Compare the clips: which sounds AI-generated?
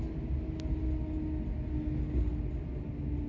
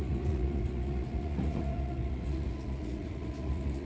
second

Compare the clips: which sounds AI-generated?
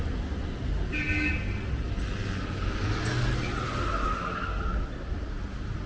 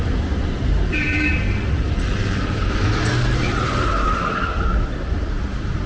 second